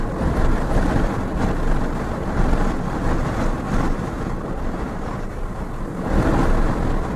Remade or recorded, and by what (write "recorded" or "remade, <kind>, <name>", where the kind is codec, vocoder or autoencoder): recorded